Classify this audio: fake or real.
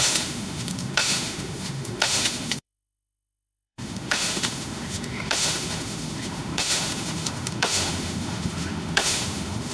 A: fake